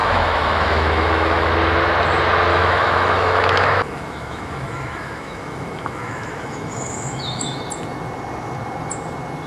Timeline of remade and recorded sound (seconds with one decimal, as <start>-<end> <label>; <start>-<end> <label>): 0.0-1.5 remade; 1.5-2.5 recorded; 2.5-7.6 remade; 7.6-9.5 recorded

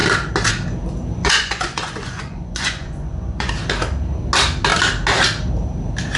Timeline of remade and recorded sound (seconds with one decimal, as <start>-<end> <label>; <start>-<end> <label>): 0.0-1.2 recorded; 1.2-3.5 remade; 3.5-6.2 recorded

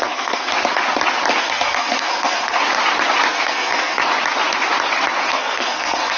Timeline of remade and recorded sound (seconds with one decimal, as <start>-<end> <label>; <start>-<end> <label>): 0.0-0.5 remade; 0.5-1.4 recorded; 1.4-2.6 remade; 2.6-3.3 recorded; 3.3-4.0 remade; 4.0-5.3 recorded; 5.3-6.2 remade

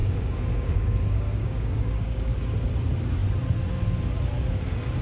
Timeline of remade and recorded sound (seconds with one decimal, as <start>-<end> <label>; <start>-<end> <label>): 0.0-2.4 remade; 2.4-5.0 recorded

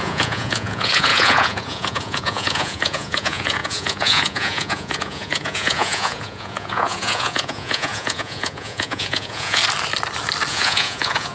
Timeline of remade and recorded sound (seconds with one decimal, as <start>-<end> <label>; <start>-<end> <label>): 0.0-9.6 remade; 9.6-10.5 recorded; 10.5-11.3 remade

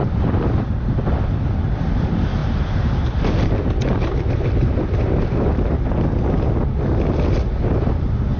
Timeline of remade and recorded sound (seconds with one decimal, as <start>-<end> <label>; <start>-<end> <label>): 0.0-0.9 remade; 0.9-2.4 recorded; 2.4-5.2 remade; 5.2-8.4 recorded

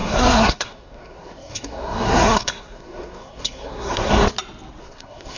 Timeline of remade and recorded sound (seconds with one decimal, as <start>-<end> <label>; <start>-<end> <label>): 0.0-4.1 remade; 4.1-4.8 recorded; 4.8-5.4 remade

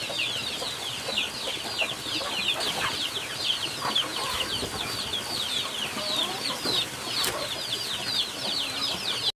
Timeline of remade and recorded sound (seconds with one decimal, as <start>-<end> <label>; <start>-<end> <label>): 0.0-4.1 recorded; 4.1-6.0 remade; 6.0-9.4 recorded